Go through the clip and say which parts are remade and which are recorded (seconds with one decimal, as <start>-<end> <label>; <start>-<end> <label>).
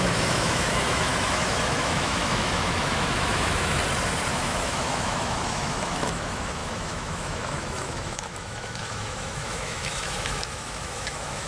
0.0-3.8 remade; 3.8-4.3 recorded; 4.3-11.5 remade